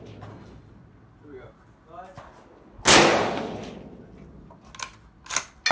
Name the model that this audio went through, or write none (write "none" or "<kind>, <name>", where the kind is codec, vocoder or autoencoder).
none